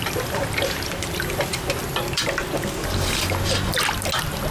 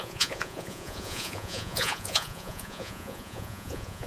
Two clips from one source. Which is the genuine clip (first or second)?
first